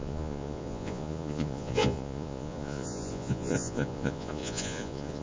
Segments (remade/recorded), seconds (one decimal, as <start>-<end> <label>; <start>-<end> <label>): 0.0-5.2 remade